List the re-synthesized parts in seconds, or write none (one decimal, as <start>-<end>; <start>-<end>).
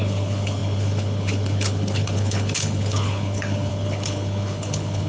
0.0-5.1